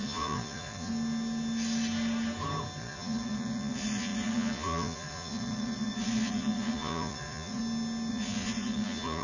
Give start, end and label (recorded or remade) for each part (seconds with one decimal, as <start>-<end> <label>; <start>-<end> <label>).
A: 0.0-0.9 remade; 0.9-2.8 recorded; 2.8-7.6 remade; 7.6-8.1 recorded; 8.1-9.2 remade